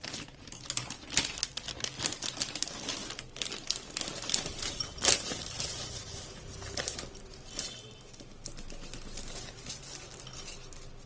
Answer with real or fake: real